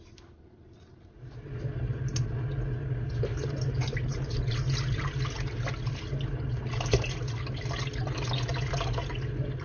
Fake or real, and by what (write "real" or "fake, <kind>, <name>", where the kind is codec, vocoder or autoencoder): real